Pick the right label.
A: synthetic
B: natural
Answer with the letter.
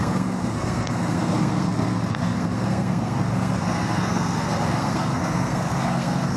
A